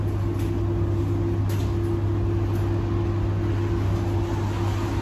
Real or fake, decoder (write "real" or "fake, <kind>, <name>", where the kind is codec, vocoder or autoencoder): real